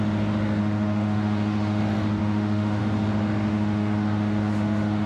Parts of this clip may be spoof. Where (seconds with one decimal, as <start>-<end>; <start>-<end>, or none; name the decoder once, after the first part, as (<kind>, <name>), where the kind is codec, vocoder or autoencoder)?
0.6-1.8 (autoencoder, DAC-VAE); 2.2-2.8; 3.5-5.1